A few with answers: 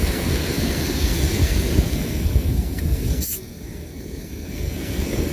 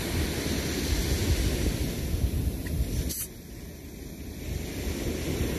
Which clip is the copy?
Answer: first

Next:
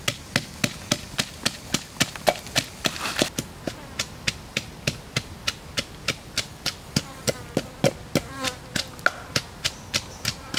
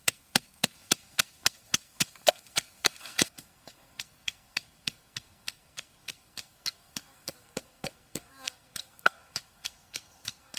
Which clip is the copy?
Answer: second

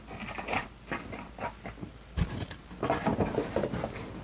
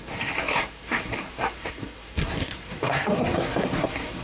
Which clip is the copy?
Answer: second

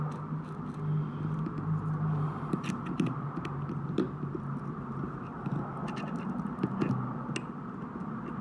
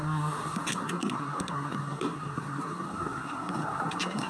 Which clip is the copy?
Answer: second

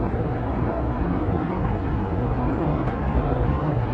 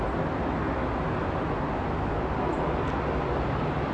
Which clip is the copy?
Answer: first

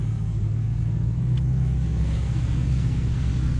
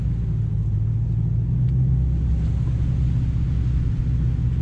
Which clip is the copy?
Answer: first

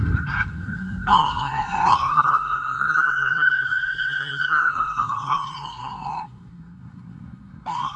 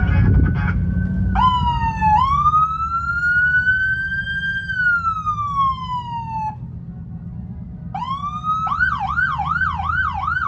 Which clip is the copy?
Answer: first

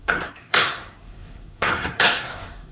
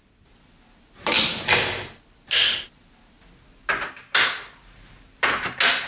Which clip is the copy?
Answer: first